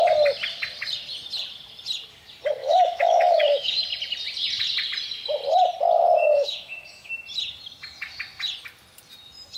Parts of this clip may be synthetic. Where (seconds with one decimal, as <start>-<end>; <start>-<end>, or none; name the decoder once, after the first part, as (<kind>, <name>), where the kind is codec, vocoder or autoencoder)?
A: 2.6-3.8 (autoencoder, DAC-VAE); 6.2-7.1